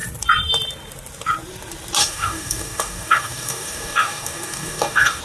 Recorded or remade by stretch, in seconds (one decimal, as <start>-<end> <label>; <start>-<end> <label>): 0.0-2.0 recorded; 2.0-5.2 remade